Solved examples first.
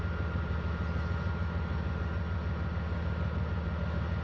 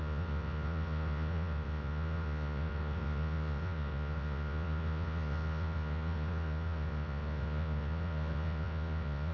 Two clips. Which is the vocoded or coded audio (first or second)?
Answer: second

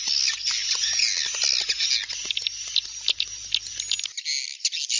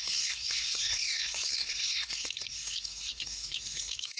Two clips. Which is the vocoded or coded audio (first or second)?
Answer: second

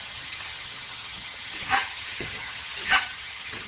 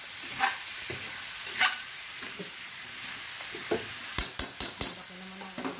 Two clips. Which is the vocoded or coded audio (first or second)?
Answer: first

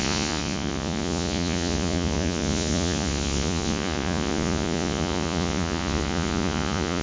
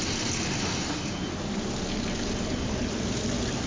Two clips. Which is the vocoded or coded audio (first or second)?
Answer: first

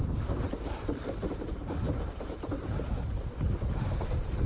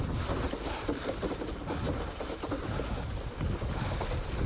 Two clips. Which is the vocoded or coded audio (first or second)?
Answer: first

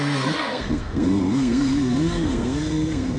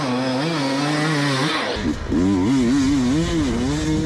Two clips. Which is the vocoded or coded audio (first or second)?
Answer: first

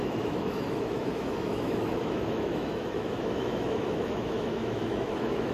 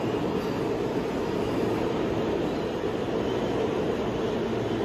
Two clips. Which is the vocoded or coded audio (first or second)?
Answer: first